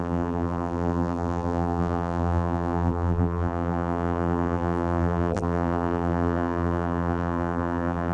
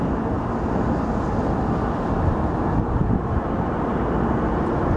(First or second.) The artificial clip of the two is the first